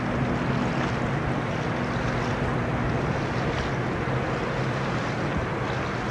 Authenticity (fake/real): real